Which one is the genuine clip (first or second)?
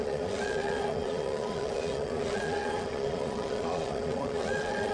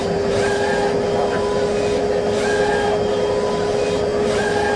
second